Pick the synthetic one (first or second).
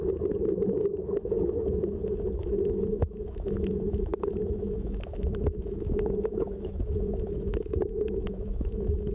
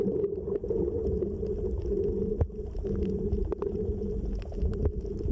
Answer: first